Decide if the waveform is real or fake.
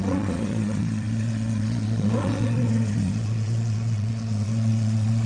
fake